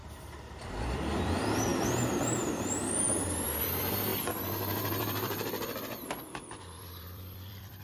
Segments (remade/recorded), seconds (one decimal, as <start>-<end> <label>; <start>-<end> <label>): 0.0-4.1 remade; 4.1-6.8 recorded; 6.8-7.8 remade

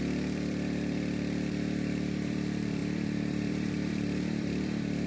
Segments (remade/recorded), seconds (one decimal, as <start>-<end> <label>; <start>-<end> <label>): 0.0-5.1 remade

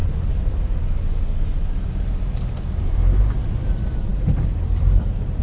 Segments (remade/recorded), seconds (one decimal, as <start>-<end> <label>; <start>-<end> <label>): 0.0-4.1 recorded; 4.1-5.4 remade

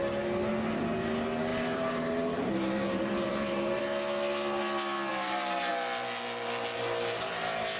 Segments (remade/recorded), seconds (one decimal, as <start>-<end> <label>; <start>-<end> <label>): 0.0-1.5 recorded; 1.5-3.8 remade; 3.8-5.1 recorded; 5.1-5.7 remade; 5.7-7.8 recorded

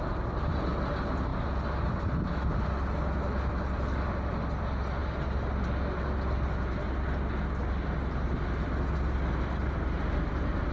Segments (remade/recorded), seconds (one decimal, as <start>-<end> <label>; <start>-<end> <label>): 0.0-10.7 recorded

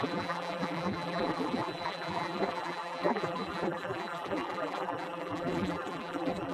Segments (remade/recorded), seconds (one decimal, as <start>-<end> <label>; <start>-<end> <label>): 0.0-6.5 remade